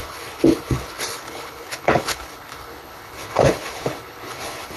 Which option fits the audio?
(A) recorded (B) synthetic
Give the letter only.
B